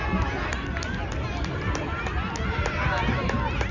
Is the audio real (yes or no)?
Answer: yes